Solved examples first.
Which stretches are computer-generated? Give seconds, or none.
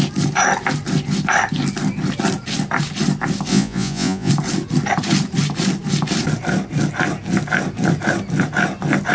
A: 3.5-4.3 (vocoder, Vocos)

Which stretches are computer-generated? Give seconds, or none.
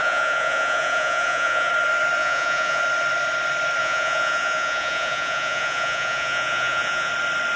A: 0.0-1.7 (vocoder, Vocos); 2.2-2.8; 3.8-7.1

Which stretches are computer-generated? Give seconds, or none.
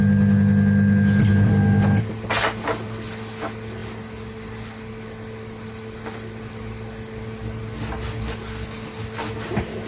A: none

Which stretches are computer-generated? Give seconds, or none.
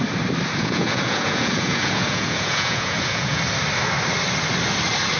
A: 0.6-3.4 (vocoder, Vocos)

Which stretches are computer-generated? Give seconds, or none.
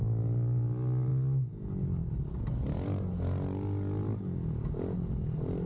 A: none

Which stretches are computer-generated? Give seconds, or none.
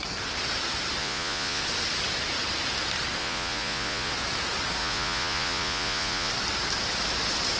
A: 1.0-1.6 (vocoder, Vocos); 3.2-4.1; 4.8-6.3